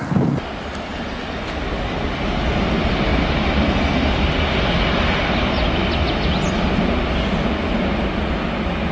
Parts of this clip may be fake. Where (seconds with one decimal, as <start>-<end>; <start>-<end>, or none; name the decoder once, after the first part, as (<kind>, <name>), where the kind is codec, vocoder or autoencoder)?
none